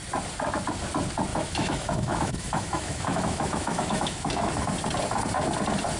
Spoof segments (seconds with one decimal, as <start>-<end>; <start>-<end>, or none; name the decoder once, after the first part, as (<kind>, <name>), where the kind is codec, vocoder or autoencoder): 1.3-4.5 (autoencoder, DAC-VAE)